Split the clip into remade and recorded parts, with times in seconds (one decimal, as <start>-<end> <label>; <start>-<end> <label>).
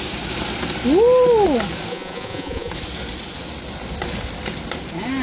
0.0-1.9 recorded; 1.9-2.7 remade; 2.7-5.2 recorded